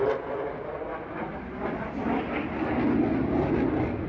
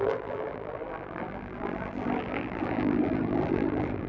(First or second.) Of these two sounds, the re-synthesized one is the second